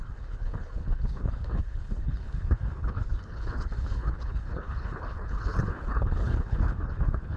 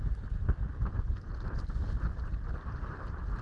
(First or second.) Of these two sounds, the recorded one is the second